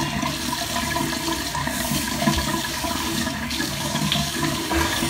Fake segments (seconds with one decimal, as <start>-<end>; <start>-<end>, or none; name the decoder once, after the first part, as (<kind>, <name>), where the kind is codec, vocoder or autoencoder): 1.6-5.1 (codec, DAC)